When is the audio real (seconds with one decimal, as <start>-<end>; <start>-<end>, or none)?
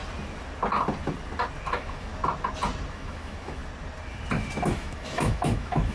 0.0-1.7; 2.1-2.9; 3.6-4.7